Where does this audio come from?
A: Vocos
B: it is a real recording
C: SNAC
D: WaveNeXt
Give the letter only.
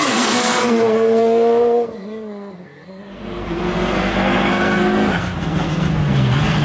C